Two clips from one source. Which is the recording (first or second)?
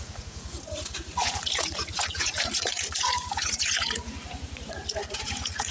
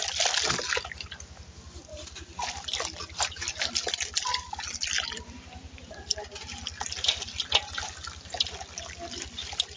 second